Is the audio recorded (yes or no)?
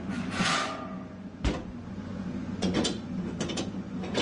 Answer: no